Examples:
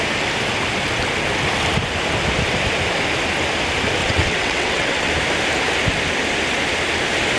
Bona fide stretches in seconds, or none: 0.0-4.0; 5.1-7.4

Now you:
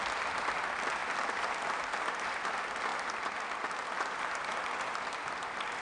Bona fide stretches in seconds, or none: 0.0-5.8

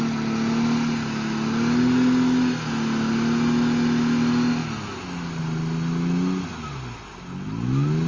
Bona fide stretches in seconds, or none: 0.0-8.1

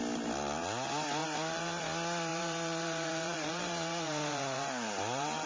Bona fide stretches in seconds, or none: 0.0-1.2; 1.8-2.3